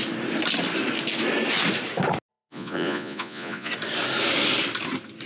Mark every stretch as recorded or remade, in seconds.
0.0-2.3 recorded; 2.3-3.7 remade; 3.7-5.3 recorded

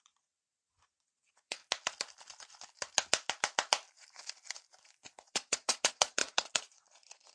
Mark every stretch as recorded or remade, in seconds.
0.0-1.6 remade; 1.6-5.3 recorded; 5.3-7.3 remade